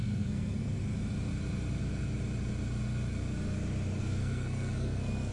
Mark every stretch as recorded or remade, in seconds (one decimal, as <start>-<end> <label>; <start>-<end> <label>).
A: 0.0-0.8 remade; 0.8-4.0 recorded; 4.0-5.3 remade